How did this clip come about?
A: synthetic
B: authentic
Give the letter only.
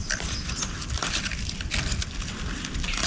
B